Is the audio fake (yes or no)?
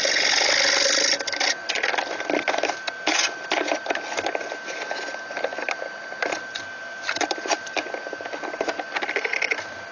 no